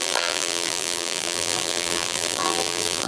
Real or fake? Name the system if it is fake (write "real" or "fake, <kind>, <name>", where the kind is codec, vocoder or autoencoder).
fake, vocoder, BigVGAN v2